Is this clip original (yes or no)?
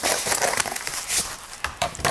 no